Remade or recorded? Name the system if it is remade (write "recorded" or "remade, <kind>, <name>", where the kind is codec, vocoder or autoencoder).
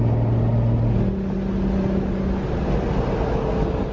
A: recorded